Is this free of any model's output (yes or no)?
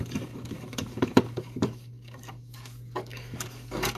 no